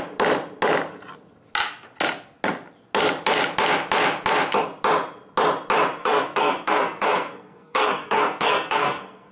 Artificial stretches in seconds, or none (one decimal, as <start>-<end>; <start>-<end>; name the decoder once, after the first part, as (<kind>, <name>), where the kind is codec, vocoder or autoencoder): 6.0-9.3 (codec, SNAC)